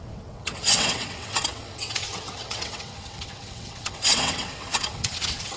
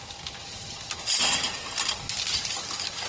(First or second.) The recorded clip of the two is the second